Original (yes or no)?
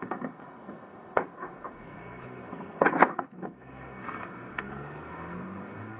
no